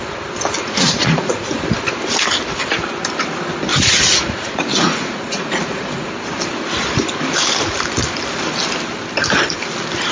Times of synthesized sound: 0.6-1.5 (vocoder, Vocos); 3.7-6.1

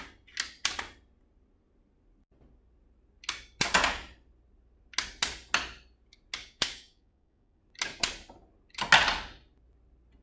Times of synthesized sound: 6.4-7.6 (codec, DAC)

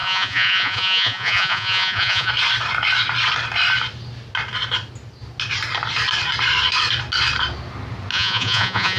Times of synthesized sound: 0.0-2.3 (vocoder, Vocos); 8.1-9.0

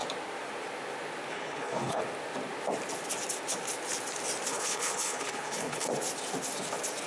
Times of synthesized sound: 1.3-2.0 (codec, HILCodec); 4.5-5.9

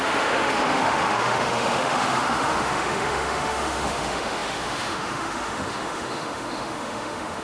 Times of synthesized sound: 0.0-7.4 (autoencoder, DAC-VAE)